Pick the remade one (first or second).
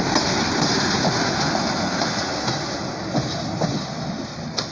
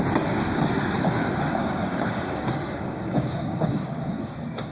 second